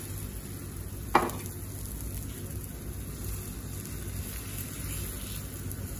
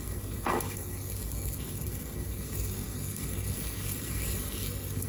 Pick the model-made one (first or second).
second